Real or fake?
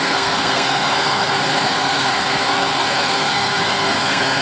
fake